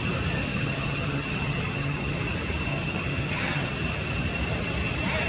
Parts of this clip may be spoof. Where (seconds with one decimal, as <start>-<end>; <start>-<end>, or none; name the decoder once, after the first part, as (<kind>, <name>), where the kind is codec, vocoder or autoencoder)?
0.5-2.2 (vocoder, HiFi-GAN); 2.7-3.7